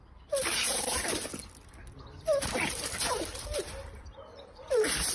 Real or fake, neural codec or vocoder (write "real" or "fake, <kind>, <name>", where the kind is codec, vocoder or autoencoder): fake, vocoder, BigVGAN v2